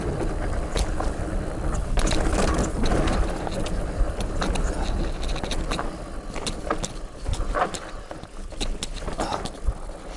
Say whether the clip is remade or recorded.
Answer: recorded